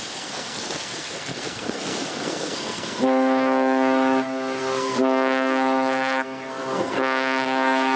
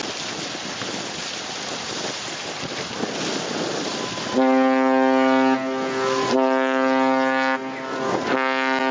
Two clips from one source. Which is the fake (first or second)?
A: first